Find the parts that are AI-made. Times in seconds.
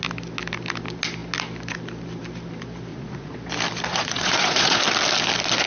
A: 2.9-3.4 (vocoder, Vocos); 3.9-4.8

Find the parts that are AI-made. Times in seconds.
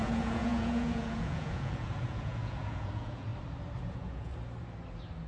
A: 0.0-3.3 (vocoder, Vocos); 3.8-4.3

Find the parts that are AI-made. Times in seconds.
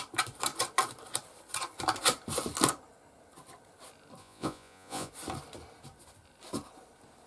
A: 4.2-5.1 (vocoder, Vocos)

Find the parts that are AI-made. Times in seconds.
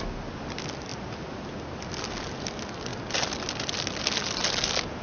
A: none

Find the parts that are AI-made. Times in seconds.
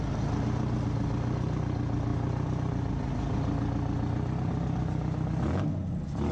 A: none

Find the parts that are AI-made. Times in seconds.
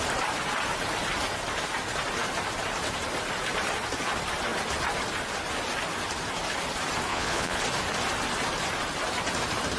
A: 7.1-7.6 (vocoder, Vocos)